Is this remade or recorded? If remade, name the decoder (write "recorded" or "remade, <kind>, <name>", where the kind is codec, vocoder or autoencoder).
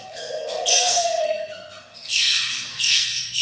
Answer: remade, codec, SNAC